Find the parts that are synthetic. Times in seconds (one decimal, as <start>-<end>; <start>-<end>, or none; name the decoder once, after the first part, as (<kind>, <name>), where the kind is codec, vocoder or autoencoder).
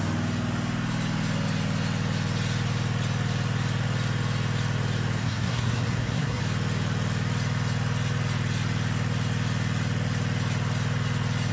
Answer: 5.2-6.4 (codec, SNAC)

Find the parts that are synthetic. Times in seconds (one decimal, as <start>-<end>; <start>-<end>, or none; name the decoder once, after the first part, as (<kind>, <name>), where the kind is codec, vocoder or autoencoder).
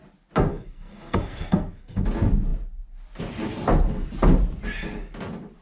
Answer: 0.5-2.0 (codec, SNAC)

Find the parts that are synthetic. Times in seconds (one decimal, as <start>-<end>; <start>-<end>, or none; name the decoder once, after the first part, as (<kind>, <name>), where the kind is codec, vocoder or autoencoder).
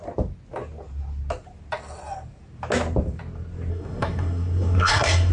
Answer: 3.7-5.3 (codec, SNAC)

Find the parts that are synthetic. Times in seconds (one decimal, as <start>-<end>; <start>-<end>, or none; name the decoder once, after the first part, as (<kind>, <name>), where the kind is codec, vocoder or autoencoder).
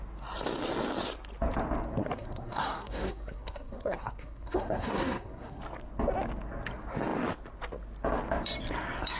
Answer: 2.0-5.6 (codec, SNAC)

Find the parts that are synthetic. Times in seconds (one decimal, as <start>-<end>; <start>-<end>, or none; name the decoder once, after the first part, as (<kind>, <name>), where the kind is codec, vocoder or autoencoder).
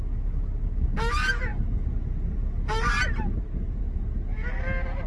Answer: none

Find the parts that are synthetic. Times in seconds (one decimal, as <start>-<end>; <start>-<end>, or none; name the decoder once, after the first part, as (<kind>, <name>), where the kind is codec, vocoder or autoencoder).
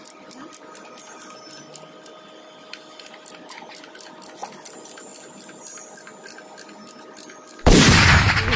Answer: none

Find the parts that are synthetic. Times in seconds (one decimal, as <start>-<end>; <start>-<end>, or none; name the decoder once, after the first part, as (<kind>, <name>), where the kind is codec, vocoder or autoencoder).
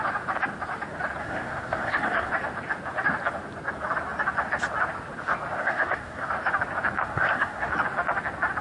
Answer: 1.2-2.3 (codec, SNAC); 5.6-6.3; 7.0-7.7